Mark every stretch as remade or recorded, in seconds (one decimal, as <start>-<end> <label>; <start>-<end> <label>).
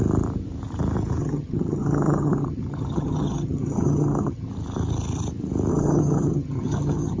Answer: 0.0-1.2 recorded; 1.2-4.5 remade; 4.5-5.7 recorded; 5.7-7.2 remade